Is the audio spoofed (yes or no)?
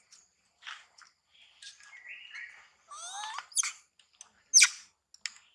no